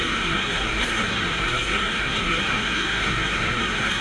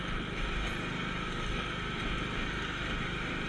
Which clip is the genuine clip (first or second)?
second